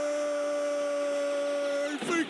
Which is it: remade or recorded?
recorded